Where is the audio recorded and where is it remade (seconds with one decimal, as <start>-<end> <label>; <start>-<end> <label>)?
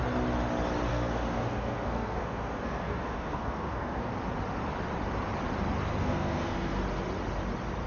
0.0-0.9 recorded; 0.9-4.1 remade; 4.1-6.0 recorded; 6.0-6.8 remade; 6.8-7.9 recorded